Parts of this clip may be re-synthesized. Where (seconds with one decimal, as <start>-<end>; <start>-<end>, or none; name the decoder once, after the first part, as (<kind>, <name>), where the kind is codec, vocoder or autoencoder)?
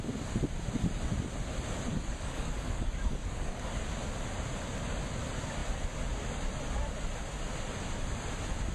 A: 1.9-3.7 (codec, DAC)